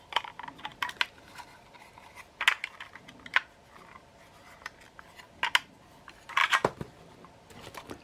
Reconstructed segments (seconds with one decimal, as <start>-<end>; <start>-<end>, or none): 6.4-7.0